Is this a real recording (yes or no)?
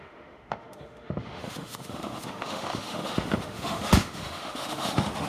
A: no